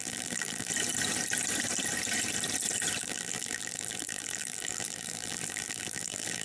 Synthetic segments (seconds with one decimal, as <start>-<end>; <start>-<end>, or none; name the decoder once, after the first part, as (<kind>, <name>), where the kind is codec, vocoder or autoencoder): 0.0-0.7 (vocoder, BigVGAN v2); 3.0-6.4